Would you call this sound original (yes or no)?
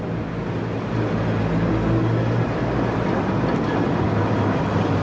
yes